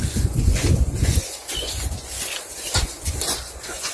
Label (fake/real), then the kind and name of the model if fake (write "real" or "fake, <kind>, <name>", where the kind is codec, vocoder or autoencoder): fake, vocoder, Vocos